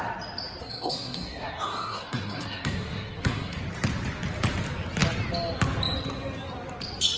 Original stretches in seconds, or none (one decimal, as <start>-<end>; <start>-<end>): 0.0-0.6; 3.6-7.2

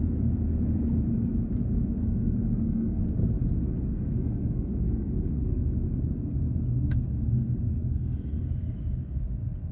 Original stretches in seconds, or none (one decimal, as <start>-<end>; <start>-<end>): 0.0-2.0; 3.0-3.9; 5.6-7.8; 8.5-9.7

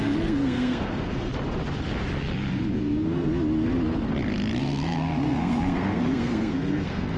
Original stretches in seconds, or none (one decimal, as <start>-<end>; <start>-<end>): 1.3-2.8; 3.3-4.6

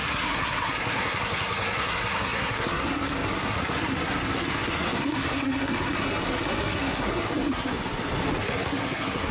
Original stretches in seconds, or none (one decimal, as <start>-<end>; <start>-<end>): 7.7-8.4

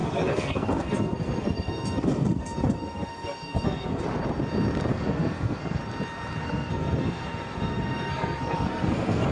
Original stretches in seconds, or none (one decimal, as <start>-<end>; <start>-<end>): 4.0-4.9; 5.8-6.4